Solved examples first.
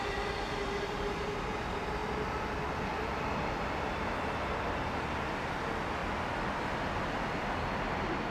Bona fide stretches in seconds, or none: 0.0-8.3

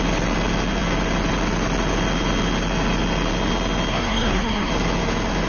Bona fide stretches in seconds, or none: 0.0-3.9; 4.7-5.5

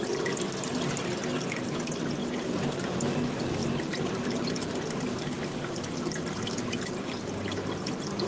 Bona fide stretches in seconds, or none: 0.0-8.3

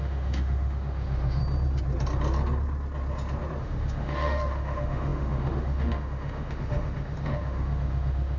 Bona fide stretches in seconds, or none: 1.4-3.6

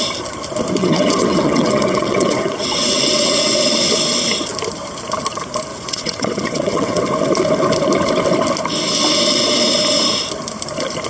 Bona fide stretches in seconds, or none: 0.0-0.8; 3.8-5.7; 7.0-11.1

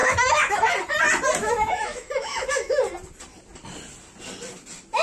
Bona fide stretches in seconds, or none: 0.7-1.4; 2.8-5.0

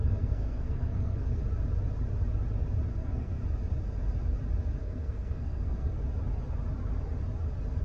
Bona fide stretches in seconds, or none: 1.4-2.9; 3.4-4.8; 6.0-7.8

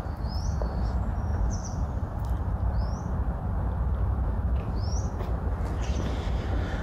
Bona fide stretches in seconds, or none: 0.0-1.3; 5.4-6.8